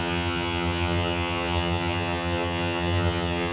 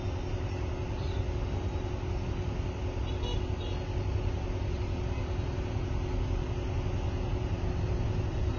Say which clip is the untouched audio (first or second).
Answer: second